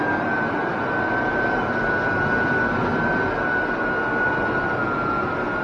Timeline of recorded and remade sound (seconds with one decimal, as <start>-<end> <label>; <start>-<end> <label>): 0.0-5.6 recorded